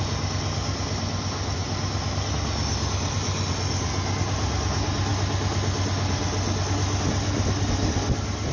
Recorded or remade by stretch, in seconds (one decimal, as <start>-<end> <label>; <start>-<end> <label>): 0.0-8.5 recorded